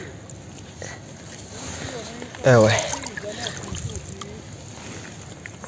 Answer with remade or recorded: recorded